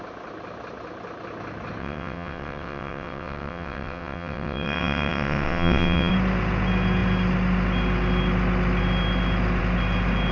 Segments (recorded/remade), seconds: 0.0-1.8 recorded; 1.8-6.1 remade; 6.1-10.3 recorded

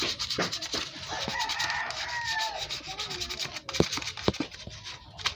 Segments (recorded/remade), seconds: 0.0-5.4 recorded

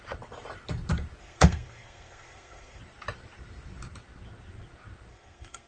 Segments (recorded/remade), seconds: 0.0-1.2 recorded; 1.2-2.8 remade; 2.8-5.1 recorded; 5.1-5.7 remade